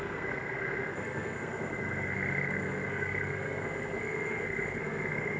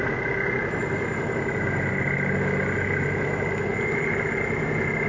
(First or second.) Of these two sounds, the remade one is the first